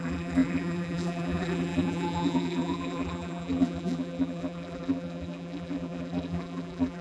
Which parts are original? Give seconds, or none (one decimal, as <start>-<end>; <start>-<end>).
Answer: none